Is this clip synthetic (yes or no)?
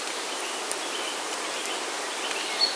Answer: no